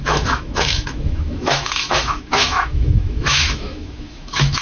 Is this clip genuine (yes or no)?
no